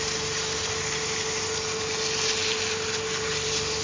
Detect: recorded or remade recorded